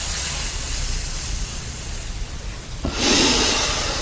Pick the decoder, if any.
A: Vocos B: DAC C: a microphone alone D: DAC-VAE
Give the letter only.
A